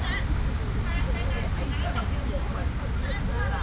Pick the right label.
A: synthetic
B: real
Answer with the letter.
B